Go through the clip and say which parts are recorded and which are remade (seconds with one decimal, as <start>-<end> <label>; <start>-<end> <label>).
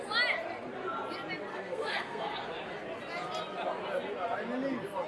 0.0-1.5 recorded; 1.5-2.4 remade; 2.4-5.1 recorded